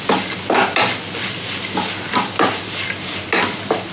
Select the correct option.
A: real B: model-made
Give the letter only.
A